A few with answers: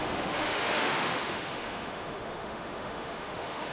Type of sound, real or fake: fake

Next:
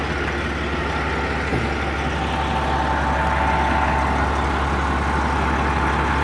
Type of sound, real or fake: real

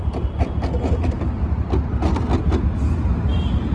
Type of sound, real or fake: real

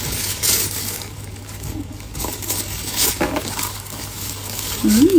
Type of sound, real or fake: fake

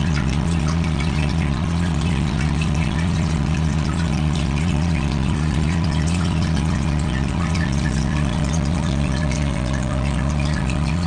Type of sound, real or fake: fake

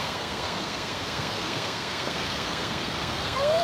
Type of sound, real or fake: fake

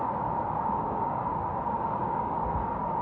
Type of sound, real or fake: fake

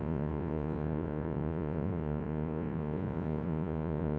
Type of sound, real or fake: fake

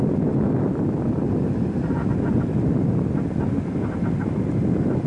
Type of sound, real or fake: real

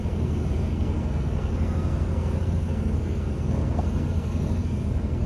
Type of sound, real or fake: fake